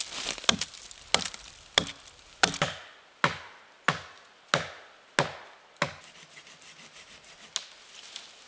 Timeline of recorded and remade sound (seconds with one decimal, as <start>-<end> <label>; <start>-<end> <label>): 0.0-8.5 recorded